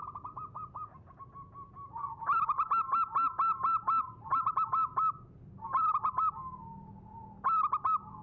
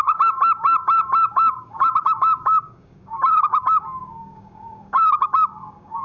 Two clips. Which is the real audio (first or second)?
first